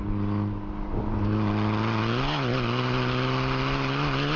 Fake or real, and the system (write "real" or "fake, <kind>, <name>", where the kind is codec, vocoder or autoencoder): real